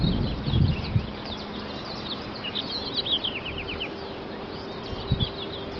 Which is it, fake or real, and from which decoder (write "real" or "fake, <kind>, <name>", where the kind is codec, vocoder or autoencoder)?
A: real